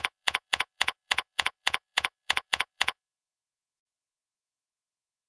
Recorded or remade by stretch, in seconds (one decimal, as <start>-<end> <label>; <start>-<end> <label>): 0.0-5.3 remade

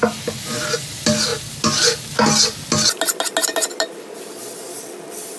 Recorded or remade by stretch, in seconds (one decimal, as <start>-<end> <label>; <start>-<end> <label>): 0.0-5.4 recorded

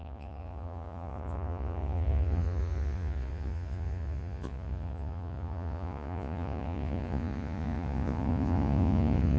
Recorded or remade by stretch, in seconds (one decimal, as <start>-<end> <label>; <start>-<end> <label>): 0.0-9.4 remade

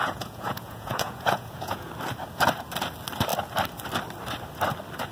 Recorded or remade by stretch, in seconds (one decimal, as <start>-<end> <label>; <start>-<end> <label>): 0.0-1.9 remade; 1.9-5.1 recorded